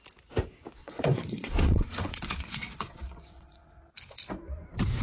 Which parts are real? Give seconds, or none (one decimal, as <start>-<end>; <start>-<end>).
0.0-0.8; 3.8-5.0